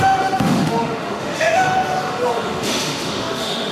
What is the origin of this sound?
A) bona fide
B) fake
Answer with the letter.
B